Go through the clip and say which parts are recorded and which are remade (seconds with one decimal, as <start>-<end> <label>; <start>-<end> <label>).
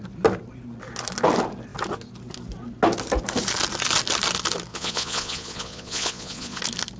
0.0-4.7 recorded; 4.7-6.6 remade; 6.6-7.0 recorded